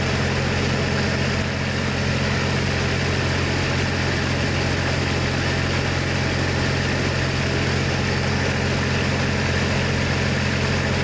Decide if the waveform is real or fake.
real